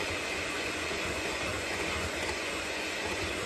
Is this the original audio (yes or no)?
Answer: no